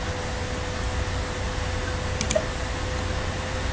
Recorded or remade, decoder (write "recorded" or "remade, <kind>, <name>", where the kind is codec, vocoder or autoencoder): recorded